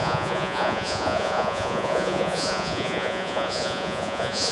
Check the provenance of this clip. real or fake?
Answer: fake